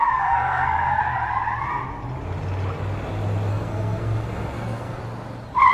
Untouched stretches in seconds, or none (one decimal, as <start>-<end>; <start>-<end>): 1.0-3.5; 5.0-5.7